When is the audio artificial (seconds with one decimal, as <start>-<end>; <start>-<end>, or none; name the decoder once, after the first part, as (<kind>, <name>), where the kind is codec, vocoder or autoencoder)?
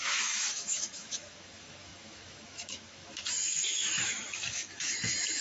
0.0-5.4 (autoencoder, DAC-VAE)